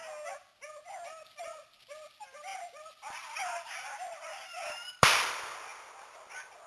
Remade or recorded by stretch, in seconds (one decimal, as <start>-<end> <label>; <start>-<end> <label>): 0.0-2.5 recorded; 2.5-5.3 remade; 5.3-5.7 recorded; 5.7-6.2 remade; 6.2-6.7 recorded

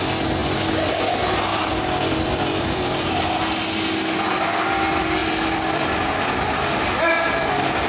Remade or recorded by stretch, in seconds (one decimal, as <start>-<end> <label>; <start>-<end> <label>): 0.0-1.5 recorded; 1.5-3.4 remade; 3.4-5.2 recorded; 5.2-6.1 remade; 6.1-7.9 recorded

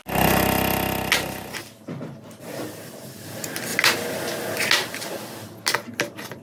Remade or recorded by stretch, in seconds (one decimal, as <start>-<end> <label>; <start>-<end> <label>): 0.0-6.4 recorded

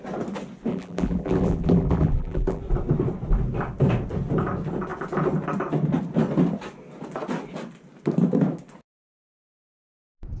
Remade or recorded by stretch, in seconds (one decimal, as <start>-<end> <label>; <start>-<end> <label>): 0.0-0.7 recorded; 0.7-2.6 remade; 2.6-10.4 recorded

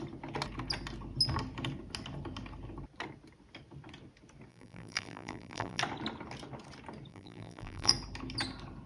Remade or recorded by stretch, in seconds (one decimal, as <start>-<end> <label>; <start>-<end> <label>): 0.0-4.5 recorded; 4.5-5.8 remade; 5.8-7.1 recorded; 7.1-7.9 remade; 7.9-8.9 recorded

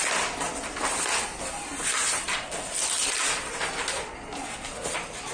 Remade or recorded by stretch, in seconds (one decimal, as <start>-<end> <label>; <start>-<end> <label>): 0.0-5.3 recorded

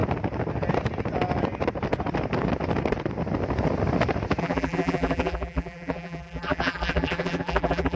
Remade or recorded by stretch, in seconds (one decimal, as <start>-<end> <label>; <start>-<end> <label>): 0.0-4.4 recorded; 4.4-8.0 remade

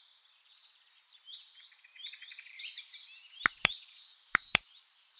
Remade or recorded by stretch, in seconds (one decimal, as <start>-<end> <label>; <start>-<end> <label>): 0.0-2.9 remade; 2.9-3.6 recorded; 3.6-5.2 remade